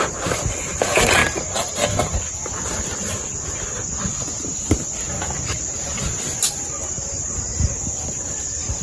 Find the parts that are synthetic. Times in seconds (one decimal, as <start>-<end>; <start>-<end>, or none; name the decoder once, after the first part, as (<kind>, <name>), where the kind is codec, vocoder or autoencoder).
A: none